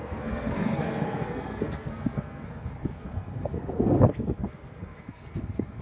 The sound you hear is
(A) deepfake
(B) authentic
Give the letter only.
A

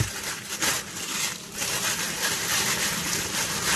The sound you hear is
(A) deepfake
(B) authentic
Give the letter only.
B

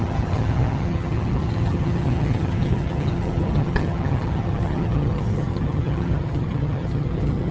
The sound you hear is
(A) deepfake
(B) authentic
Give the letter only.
A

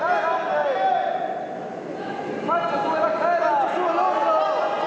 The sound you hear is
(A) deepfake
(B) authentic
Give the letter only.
B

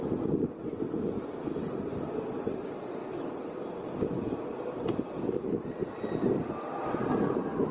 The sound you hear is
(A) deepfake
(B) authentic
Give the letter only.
B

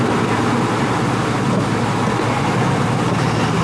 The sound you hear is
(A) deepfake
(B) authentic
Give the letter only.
B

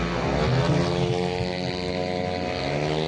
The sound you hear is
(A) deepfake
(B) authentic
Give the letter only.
B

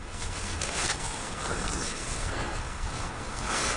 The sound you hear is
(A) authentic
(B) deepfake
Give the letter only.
B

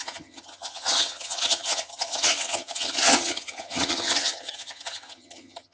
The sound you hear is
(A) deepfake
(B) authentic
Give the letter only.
A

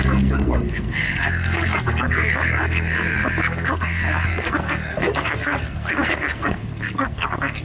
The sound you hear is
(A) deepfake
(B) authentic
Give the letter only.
A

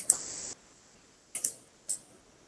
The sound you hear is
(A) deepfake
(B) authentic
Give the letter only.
B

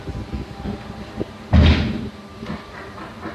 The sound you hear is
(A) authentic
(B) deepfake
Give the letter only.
B